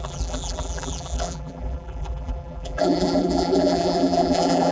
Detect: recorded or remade remade